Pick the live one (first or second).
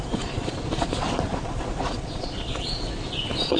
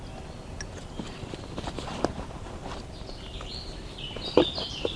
second